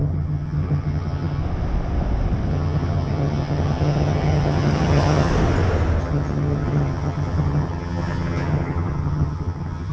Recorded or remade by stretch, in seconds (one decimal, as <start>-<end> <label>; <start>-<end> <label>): 0.0-1.4 remade; 1.4-2.5 recorded; 2.5-5.3 remade; 5.3-6.0 recorded; 6.0-9.9 remade